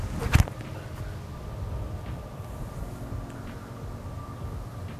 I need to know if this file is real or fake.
real